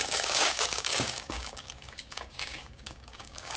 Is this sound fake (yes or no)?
yes